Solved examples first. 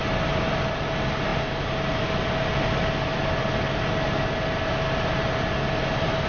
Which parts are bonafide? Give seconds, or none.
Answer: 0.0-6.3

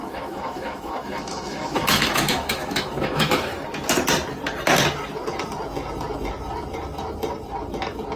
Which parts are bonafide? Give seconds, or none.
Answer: 3.5-8.2

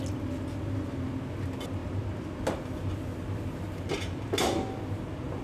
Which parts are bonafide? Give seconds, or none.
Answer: 0.0-5.4

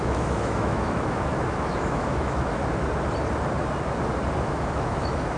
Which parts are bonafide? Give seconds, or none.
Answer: 2.6-4.4